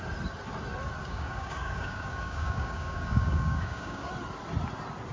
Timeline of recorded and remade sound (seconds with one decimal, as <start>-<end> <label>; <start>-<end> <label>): 0.0-1.0 recorded; 1.0-4.1 remade; 4.1-5.1 recorded

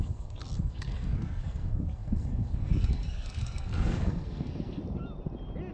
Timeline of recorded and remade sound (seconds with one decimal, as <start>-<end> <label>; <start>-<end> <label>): 0.0-4.8 remade; 4.8-5.7 recorded

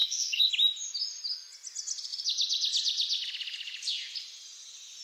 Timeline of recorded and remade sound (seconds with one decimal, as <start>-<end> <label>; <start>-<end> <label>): 0.0-0.5 remade; 0.5-5.0 recorded

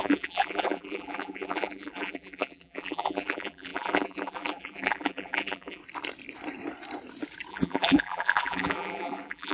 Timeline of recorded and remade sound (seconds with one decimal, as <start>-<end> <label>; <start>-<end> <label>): 0.0-5.8 remade; 5.8-7.5 recorded; 7.5-9.5 remade

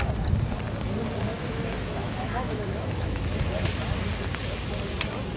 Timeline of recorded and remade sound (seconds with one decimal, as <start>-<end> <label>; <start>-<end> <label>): 0.0-1.3 recorded; 1.3-3.2 remade; 3.2-5.4 recorded

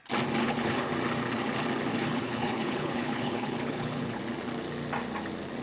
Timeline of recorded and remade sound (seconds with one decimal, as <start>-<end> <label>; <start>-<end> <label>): 0.0-0.4 recorded; 0.4-0.9 remade; 0.9-1.9 recorded; 1.9-4.2 remade; 4.2-5.6 recorded